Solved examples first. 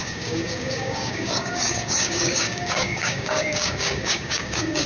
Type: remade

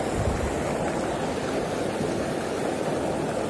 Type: recorded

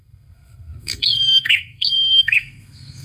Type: remade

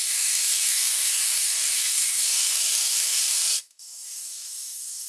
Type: remade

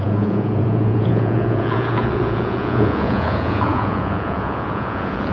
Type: remade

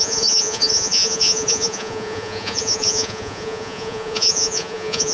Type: remade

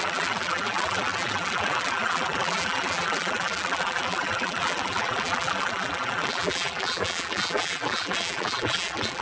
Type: remade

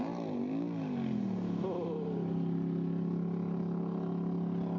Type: recorded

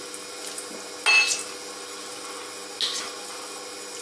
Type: recorded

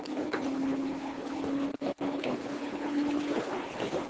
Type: remade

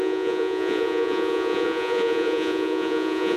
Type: remade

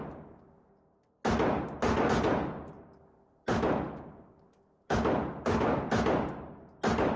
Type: recorded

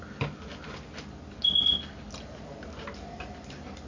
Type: recorded